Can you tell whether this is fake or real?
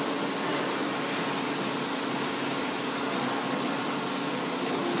real